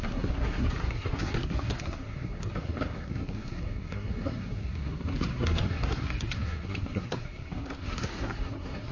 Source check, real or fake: fake